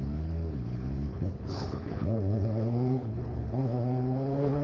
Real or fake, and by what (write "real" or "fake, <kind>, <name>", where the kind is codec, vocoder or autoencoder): fake, codec, HILCodec